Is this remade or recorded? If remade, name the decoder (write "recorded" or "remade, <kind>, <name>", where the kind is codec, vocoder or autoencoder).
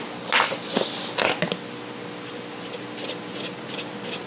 recorded